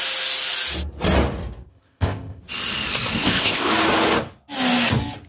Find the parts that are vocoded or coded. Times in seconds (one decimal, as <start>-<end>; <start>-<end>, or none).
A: 1.7-2.4; 3.2-3.7